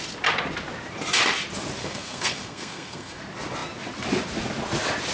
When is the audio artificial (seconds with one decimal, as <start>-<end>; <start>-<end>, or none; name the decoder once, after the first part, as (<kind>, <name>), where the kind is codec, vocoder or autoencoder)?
1.8-3.2 (codec, SNAC)